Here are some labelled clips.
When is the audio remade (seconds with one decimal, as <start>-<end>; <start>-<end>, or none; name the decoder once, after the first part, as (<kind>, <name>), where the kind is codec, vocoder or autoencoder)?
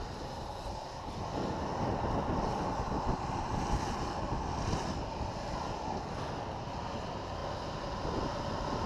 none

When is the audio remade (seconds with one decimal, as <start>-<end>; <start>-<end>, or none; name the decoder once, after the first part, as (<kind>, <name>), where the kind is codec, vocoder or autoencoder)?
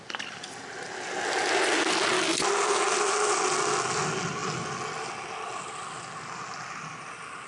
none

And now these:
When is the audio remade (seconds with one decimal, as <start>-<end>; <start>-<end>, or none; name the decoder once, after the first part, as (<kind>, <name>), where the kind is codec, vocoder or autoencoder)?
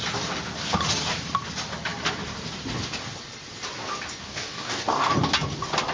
4.2-5.1 (codec, DAC)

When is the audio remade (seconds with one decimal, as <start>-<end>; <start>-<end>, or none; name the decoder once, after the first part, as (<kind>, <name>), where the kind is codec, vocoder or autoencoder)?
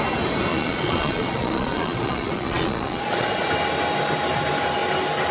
0.5-3.5 (vocoder, Vocos)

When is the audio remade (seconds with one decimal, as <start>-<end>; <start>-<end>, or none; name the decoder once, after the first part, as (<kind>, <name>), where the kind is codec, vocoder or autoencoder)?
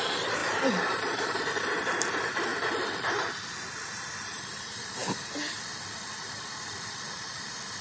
0.0-2.5 (vocoder, BigVGAN v2); 4.0-5.0; 6.2-7.8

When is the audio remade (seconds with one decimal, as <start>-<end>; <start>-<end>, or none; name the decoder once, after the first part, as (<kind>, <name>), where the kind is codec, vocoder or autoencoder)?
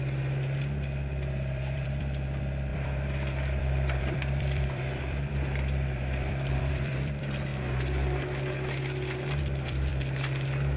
0.0-7.5 (vocoder, BigVGAN v2); 9.4-9.9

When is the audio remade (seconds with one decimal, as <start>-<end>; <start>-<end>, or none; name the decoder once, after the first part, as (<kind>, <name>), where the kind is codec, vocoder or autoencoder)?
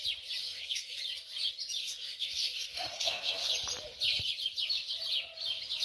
0.4-1.0 (codec, SNAC); 1.8-3.5